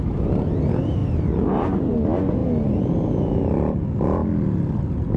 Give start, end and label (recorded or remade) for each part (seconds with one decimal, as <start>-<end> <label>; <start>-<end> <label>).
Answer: 0.0-5.2 recorded